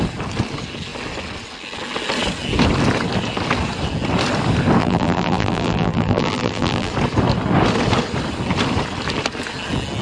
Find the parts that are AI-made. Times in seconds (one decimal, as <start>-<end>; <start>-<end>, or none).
4.8-6.9